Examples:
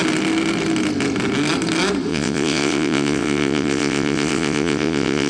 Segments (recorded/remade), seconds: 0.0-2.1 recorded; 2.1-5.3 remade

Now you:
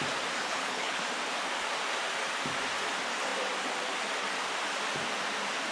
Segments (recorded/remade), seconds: 0.0-0.4 recorded; 0.4-1.0 remade; 1.0-5.7 recorded

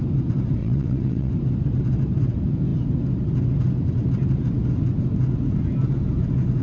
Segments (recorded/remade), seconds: 0.0-0.6 recorded; 0.6-1.3 remade; 1.3-6.6 recorded

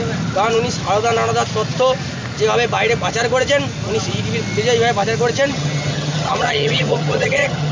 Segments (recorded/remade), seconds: 0.0-5.5 recorded; 5.5-7.7 remade